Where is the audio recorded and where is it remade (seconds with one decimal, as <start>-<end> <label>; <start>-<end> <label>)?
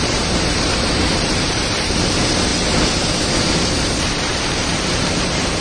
0.0-2.5 remade; 2.5-3.6 recorded; 3.6-5.6 remade